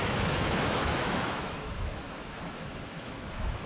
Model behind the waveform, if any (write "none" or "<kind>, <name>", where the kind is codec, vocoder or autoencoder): autoencoder, DAC-VAE